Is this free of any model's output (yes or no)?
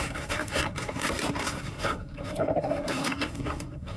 no